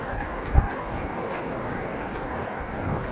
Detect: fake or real fake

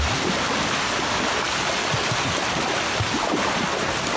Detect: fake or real real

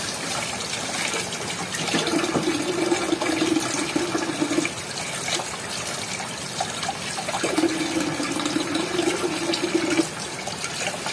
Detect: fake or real real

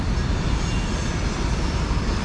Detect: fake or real real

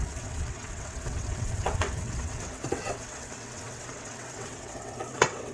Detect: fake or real fake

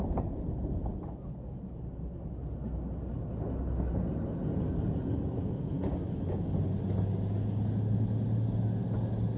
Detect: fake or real real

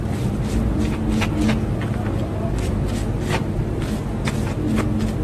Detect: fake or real real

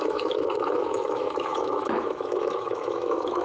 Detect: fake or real fake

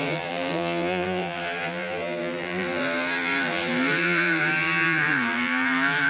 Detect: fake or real fake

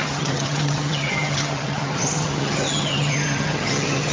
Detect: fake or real fake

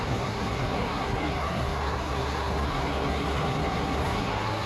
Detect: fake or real fake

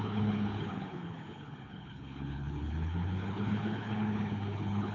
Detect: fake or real fake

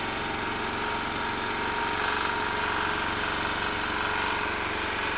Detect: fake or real real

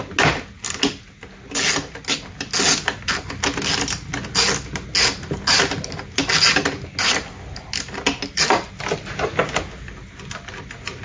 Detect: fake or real real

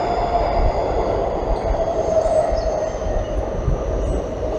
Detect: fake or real real